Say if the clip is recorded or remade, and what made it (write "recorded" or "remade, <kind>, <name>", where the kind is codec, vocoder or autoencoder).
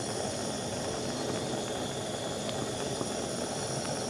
recorded